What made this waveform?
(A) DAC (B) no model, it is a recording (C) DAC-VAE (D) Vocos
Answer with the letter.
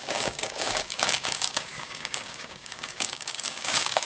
A